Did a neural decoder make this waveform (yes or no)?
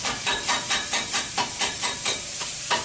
yes